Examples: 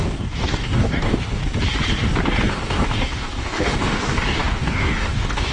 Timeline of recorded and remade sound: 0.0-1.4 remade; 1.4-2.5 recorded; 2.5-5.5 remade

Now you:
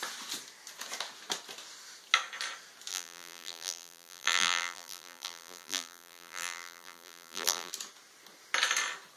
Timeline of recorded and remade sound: 0.0-2.9 recorded; 2.9-7.7 remade; 7.7-9.2 recorded

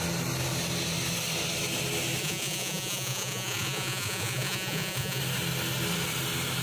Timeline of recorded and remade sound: 0.0-2.2 recorded; 2.2-5.2 remade; 5.2-6.6 recorded

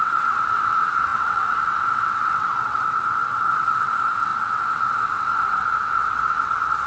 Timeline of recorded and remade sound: 0.0-6.9 remade

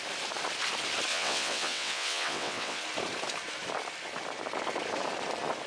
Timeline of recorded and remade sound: 0.0-1.1 recorded; 1.1-2.8 remade; 2.8-5.7 recorded